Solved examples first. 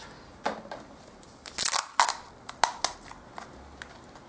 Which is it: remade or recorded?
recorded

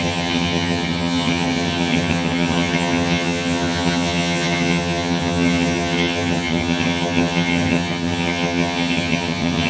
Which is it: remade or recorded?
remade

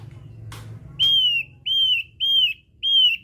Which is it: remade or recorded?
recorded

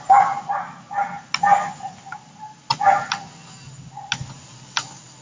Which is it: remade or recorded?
recorded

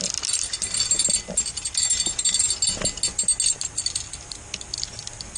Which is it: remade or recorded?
recorded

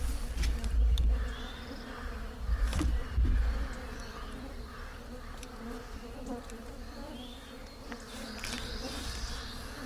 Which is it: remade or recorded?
recorded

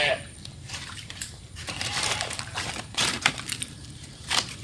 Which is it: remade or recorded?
remade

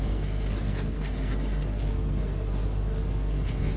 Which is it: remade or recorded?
remade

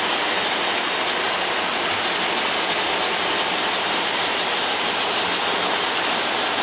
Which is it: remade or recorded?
recorded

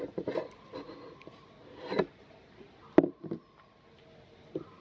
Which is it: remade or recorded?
recorded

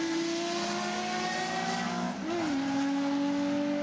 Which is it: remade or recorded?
recorded